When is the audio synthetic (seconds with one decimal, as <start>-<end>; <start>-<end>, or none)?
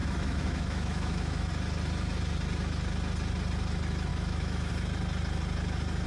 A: 0.0-1.5; 4.1-4.7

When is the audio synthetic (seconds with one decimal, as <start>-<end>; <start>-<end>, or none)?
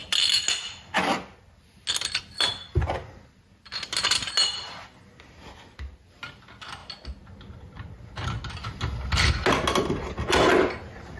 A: none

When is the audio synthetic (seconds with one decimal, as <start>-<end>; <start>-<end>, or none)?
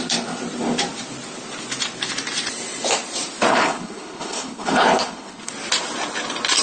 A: 3.5-5.5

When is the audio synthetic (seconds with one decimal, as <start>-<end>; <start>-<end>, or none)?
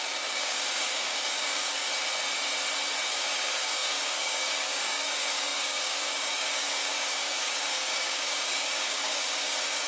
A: 0.0-1.9; 3.1-9.9